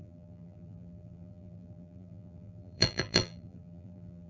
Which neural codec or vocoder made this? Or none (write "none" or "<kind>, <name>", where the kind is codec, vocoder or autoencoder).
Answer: vocoder, BigVGAN v2